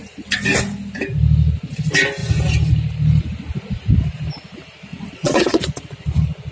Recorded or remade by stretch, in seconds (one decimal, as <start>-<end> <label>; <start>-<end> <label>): 0.0-4.9 recorded; 4.9-5.6 remade; 5.6-6.5 recorded